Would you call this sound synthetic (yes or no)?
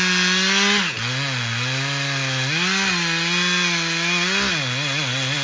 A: no